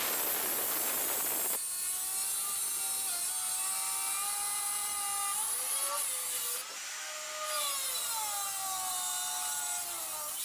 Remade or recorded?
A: recorded